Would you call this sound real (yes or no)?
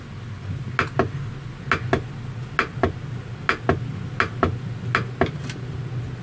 yes